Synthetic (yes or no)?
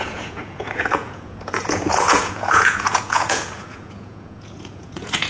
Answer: yes